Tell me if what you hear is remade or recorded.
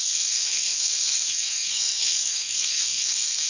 remade